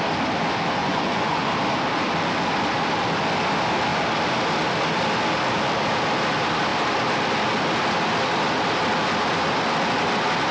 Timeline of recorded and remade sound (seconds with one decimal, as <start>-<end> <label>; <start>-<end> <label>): 0.0-0.8 recorded; 0.8-1.5 remade; 1.5-10.5 recorded